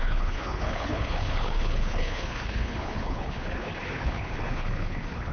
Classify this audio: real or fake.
fake